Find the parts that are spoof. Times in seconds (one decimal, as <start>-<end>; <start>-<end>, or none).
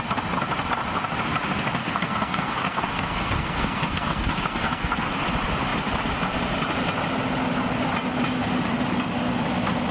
1.8-5.1